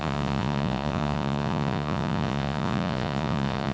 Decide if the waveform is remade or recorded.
remade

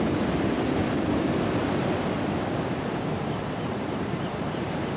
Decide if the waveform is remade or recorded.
remade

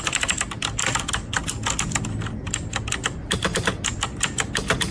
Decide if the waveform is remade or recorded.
recorded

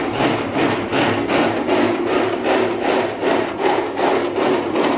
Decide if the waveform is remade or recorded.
recorded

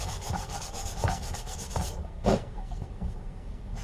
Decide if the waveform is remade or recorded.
remade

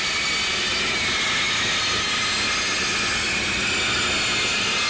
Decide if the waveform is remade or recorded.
recorded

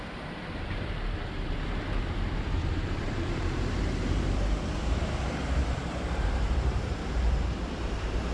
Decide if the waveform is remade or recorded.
remade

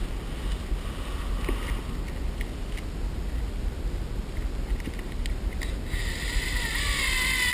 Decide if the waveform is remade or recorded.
recorded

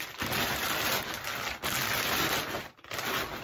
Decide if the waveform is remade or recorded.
recorded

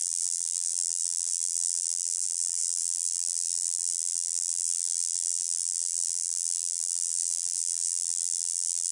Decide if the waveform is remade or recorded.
remade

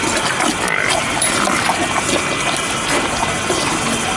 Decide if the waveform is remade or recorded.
recorded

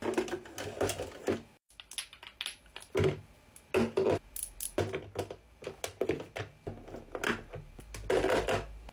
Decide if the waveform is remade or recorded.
recorded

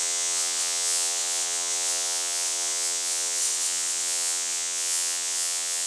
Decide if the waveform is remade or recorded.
remade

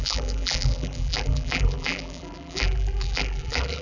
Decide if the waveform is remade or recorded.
remade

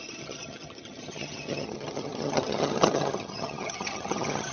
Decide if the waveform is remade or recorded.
remade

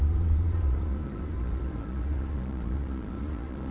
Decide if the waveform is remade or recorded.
remade